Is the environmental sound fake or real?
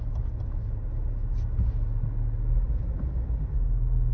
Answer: real